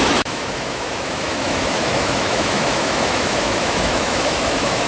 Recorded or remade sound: remade